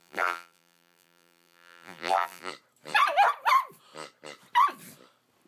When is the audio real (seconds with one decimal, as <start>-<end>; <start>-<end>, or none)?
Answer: 2.5-5.5